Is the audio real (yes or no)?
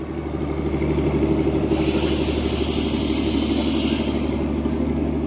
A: yes